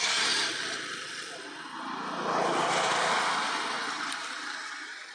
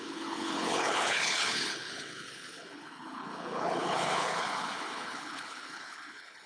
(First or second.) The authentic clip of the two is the first